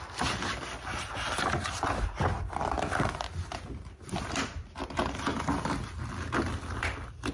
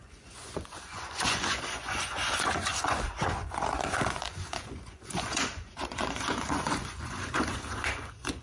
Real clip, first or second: first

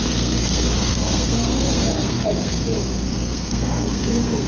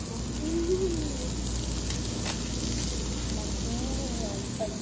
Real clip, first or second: second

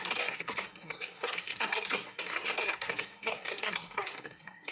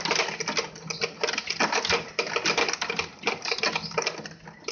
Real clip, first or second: second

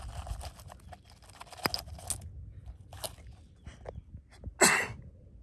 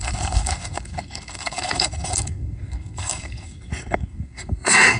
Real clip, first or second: first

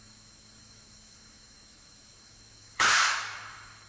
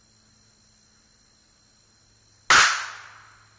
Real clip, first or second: second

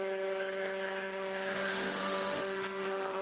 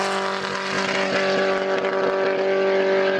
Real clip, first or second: second